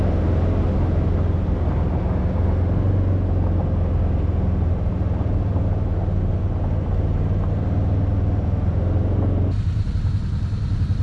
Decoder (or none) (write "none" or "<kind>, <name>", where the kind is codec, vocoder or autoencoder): none